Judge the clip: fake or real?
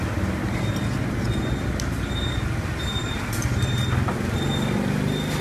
real